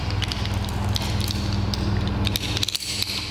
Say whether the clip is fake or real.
real